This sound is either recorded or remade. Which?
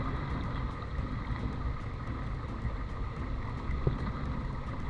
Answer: recorded